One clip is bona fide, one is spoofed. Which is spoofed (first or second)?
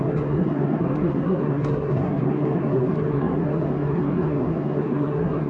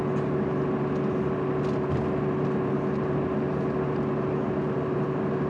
first